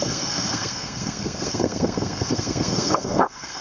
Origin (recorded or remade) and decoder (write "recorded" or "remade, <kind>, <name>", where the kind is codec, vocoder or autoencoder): remade, codec, SNAC